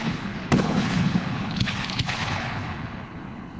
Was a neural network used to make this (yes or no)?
yes